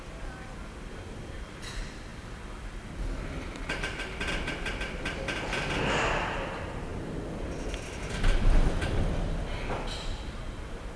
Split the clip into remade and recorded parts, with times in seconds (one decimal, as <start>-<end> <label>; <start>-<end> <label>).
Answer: 0.0-2.1 remade; 2.1-2.9 recorded; 2.9-6.9 remade; 6.9-9.6 recorded; 9.6-11.0 remade